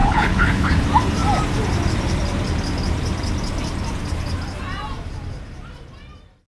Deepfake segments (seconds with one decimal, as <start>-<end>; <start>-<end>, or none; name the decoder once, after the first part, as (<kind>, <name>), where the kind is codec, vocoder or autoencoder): 0.0-0.7 (codec, HILCodec)